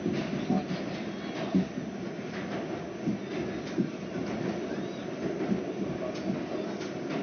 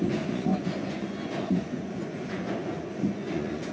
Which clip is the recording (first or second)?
first